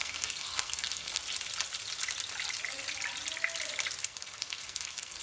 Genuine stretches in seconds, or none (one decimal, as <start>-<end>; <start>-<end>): 1.2-4.0